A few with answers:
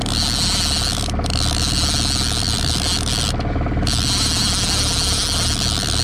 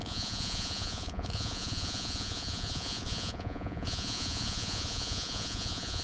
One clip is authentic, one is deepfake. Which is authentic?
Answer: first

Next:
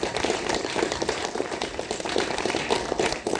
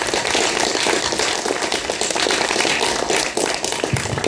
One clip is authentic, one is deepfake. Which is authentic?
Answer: second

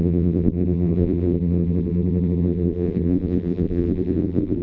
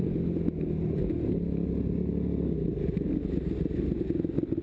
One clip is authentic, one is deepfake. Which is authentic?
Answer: second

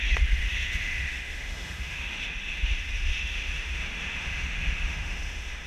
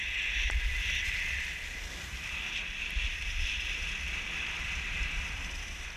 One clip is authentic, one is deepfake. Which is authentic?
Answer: second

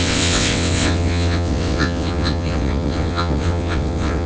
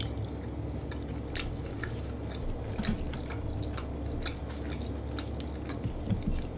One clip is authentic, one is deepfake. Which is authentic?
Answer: second